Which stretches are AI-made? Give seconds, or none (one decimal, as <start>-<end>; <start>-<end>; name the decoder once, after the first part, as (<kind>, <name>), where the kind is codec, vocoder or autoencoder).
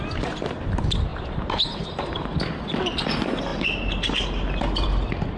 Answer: none